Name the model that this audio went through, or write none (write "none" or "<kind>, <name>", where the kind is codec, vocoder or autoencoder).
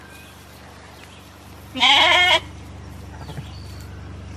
none